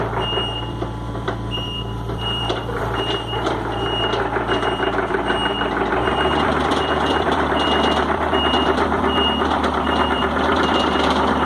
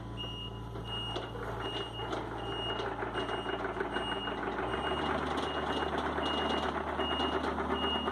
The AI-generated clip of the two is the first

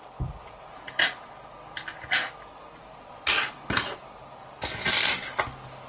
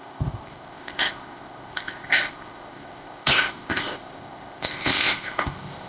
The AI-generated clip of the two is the second